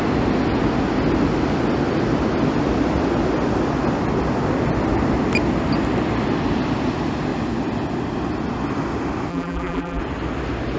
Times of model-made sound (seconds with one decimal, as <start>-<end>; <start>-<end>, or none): 9.3-10.0

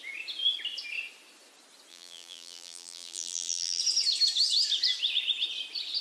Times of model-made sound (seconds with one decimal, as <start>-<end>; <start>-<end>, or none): 1.9-3.8

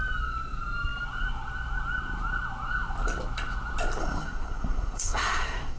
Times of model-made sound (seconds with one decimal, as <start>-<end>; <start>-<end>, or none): 4.0-5.8

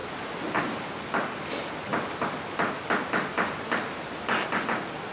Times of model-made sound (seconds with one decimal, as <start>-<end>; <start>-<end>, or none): none

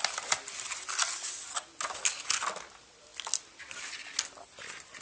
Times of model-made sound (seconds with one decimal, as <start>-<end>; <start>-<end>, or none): none

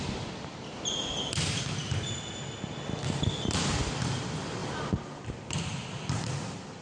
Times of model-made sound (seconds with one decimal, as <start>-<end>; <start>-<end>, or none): none

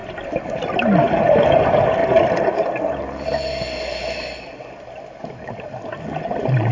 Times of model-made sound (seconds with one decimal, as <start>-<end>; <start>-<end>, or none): none

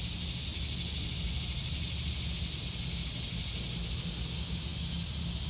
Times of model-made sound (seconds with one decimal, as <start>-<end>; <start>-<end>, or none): none